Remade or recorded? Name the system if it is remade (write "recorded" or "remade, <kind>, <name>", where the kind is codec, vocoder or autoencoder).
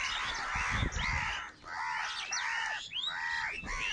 recorded